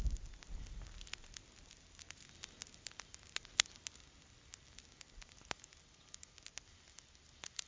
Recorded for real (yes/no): yes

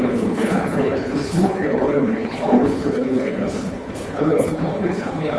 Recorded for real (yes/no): no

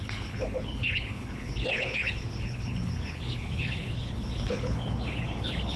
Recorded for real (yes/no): no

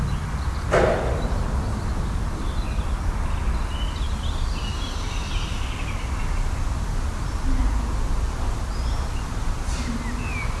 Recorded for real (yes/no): yes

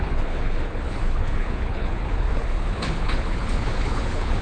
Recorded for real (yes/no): no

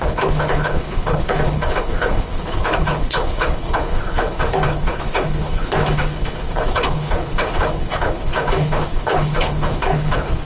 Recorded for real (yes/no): no